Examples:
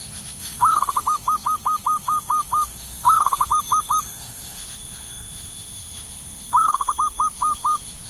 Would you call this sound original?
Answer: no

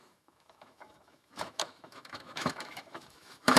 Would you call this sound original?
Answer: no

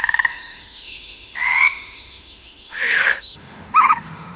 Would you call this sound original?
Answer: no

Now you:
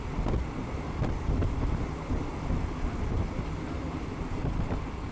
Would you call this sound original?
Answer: yes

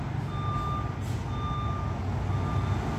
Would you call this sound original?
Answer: yes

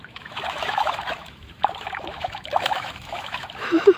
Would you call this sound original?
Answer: no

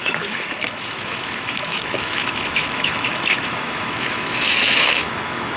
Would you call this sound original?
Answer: no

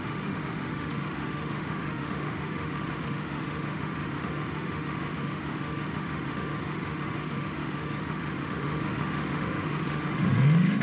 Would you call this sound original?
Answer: no